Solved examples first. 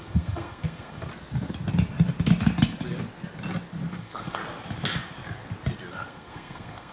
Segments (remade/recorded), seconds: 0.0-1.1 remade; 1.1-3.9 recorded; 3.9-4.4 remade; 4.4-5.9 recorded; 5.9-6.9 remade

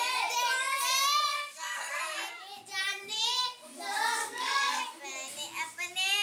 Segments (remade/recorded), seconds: 0.0-1.3 recorded; 1.3-2.0 remade; 2.0-4.2 recorded; 4.2-4.8 remade; 4.8-6.2 recorded

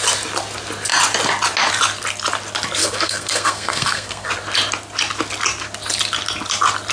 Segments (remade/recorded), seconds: 0.0-2.8 recorded; 2.8-4.3 remade; 4.3-6.9 recorded

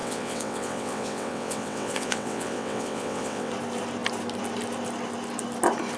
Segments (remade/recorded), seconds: 0.0-3.5 remade; 3.5-6.0 recorded

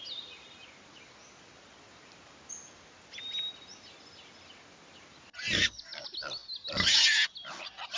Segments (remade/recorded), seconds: 0.0-8.0 recorded

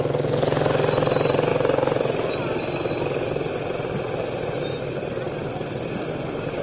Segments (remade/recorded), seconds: 0.0-6.6 recorded

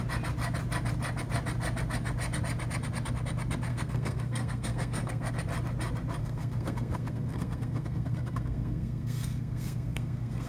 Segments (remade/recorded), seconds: 0.0-3.7 recorded; 3.7-5.3 remade; 5.3-6.2 recorded; 6.2-10.5 remade

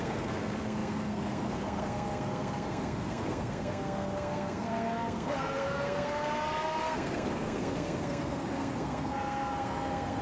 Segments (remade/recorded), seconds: 0.0-10.2 remade